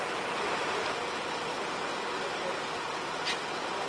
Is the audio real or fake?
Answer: real